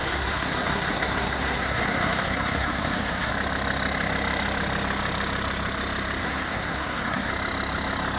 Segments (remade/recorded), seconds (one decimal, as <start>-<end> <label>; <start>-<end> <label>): 0.0-3.3 remade; 3.3-6.2 recorded; 6.2-7.3 remade; 7.3-8.2 recorded